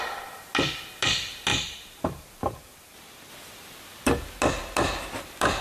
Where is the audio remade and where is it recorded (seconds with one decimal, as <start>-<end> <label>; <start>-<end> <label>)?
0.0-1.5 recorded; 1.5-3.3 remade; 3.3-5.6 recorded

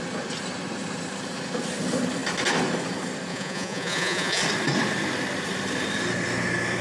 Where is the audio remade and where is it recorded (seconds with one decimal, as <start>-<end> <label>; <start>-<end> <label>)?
0.0-3.3 recorded; 3.3-4.4 remade; 4.4-6.8 recorded

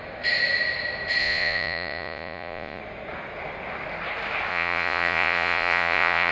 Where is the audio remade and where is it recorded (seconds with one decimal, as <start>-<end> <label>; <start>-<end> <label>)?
0.0-1.2 recorded; 1.2-2.8 remade; 2.8-4.5 recorded; 4.5-6.3 remade

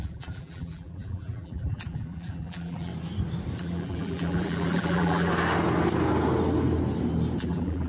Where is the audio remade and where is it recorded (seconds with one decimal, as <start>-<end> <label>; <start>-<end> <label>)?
0.0-2.9 remade; 2.9-3.6 recorded; 3.6-5.3 remade; 5.3-7.4 recorded; 7.4-7.9 remade

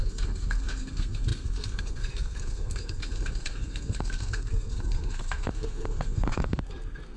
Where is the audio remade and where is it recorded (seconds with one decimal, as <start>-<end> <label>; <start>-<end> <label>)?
0.0-7.2 remade

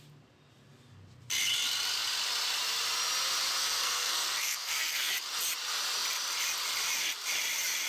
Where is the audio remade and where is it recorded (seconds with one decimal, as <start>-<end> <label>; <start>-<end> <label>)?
0.0-3.6 recorded; 3.6-5.1 remade; 5.1-7.9 recorded

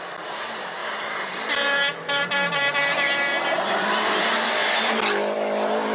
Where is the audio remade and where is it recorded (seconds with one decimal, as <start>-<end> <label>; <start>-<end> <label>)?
0.0-0.8 recorded; 0.8-4.3 remade; 4.3-5.9 recorded

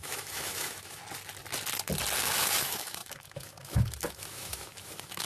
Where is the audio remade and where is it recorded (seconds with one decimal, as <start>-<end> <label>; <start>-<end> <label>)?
0.0-1.0 remade; 1.0-2.2 recorded; 2.2-5.2 remade